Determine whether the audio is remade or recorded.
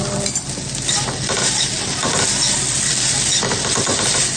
recorded